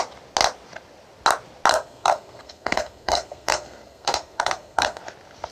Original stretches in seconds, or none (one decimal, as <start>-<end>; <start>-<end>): 0.0-1.7; 5.0-5.5